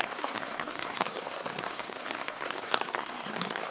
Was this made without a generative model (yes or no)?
no